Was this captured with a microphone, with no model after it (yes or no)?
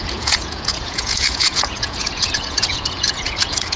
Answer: no